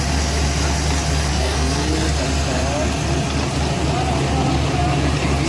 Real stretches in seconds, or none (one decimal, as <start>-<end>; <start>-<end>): 0.0-1.3; 1.9-5.5